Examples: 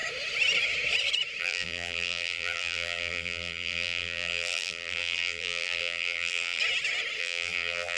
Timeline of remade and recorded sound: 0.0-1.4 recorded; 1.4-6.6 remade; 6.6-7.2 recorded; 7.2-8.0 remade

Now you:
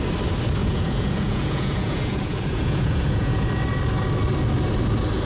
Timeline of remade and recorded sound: 0.0-0.6 recorded; 0.6-3.5 remade; 3.5-5.3 recorded

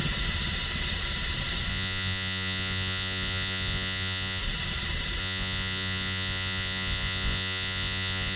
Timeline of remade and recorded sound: 0.0-1.7 recorded; 1.7-4.4 remade; 4.4-5.2 recorded; 5.2-8.4 remade

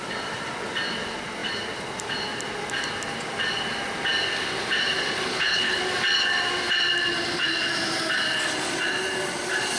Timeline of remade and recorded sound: 0.0-5.3 recorded; 5.3-5.8 remade; 5.8-9.8 recorded

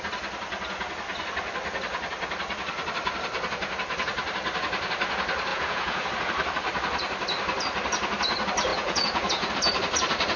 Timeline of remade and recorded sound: 0.0-5.5 recorded; 5.5-6.1 remade; 6.1-8.7 recorded; 8.7-9.5 remade; 9.5-10.4 recorded

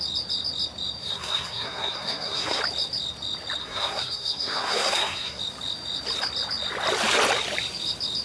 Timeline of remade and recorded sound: 0.0-1.0 recorded; 1.0-2.6 remade; 2.6-3.6 recorded; 3.6-5.4 remade; 5.4-8.2 recorded